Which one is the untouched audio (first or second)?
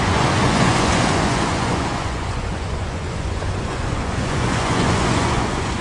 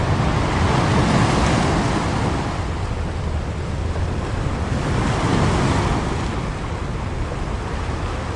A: second